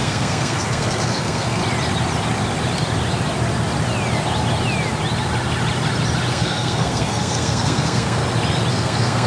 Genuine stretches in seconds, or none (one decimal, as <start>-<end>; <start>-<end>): 1.6-6.3; 8.2-8.7